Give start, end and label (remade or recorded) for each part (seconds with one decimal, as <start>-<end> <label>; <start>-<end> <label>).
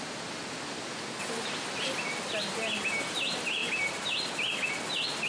0.0-5.3 recorded